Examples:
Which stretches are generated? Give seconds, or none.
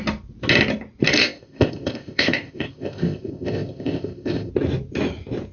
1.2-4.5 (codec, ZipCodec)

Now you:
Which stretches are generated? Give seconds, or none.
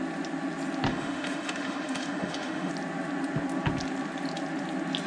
0.9-2.7 (autoencoder, DAC-VAE)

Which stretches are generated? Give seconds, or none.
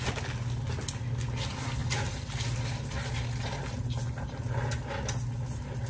none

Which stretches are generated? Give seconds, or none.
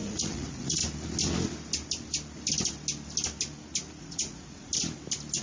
0.0-0.8 (vocoder, Vocos); 4.0-4.7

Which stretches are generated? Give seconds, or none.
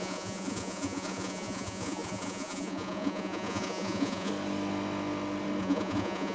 0.0-4.3 (vocoder, Vocos); 5.6-6.3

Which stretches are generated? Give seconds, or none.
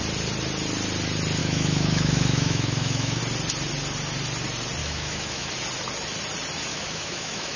1.4-3.2 (autoencoder, DAC-VAE); 4.8-5.5; 6.7-7.6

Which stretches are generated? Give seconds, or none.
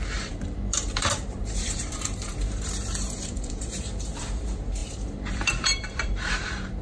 0.0-6.8 (vocoder, BigVGAN v2)